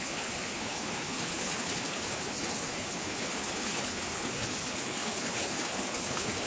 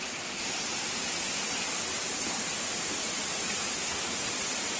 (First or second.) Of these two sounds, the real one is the second